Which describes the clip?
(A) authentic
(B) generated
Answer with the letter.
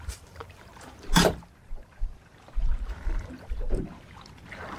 B